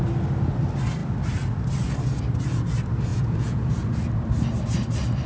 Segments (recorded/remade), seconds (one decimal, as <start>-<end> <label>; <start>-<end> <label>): 0.0-3.1 recorded; 3.1-3.7 remade; 3.7-5.3 recorded